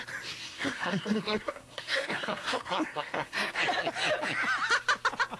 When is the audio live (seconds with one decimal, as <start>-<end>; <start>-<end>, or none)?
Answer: 0.0-0.4; 3.6-5.4